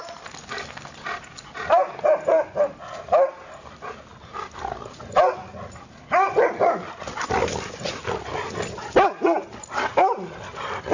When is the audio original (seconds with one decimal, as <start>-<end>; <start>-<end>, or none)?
0.0-10.9